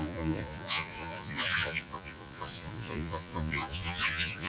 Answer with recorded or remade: remade